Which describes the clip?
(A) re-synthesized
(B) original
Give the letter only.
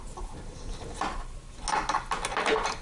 B